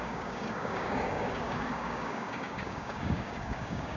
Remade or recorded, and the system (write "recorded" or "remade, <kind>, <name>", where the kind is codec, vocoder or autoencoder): remade, codec, DAC